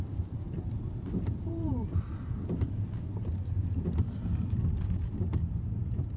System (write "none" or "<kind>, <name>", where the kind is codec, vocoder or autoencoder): vocoder, BigVGAN v2